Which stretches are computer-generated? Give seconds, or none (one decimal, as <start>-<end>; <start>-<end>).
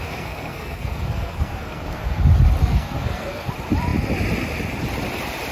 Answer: 0.0-2.2; 2.6-3.5